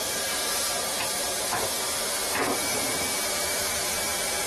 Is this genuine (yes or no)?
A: no